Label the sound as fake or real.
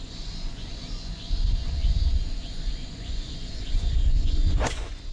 fake